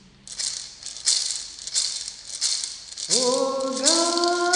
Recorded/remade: recorded